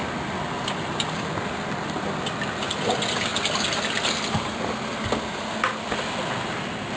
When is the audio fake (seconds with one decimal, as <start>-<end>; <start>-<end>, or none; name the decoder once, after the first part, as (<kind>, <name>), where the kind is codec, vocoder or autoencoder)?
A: none